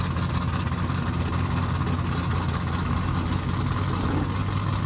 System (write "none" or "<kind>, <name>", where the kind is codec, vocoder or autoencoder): none